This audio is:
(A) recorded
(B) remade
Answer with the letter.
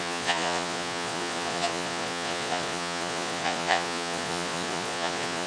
B